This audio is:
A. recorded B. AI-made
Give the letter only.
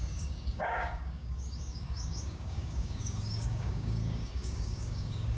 B